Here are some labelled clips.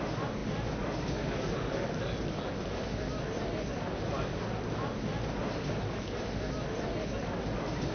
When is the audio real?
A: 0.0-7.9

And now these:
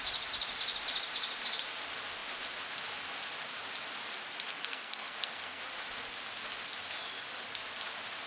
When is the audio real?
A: 0.0-4.5; 5.6-8.3

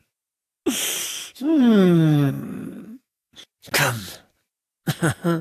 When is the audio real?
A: 0.0-1.0; 3.3-5.4

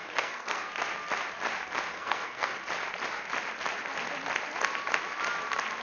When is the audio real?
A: 0.7-1.9; 2.6-5.8

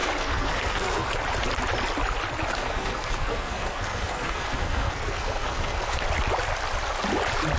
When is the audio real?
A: 1.1-2.5; 6.0-7.6

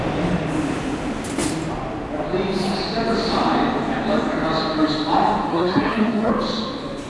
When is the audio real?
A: 0.0-5.5; 6.3-7.1